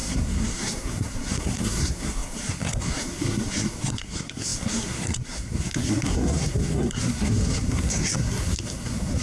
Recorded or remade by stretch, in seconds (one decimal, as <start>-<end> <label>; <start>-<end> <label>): 0.0-9.2 remade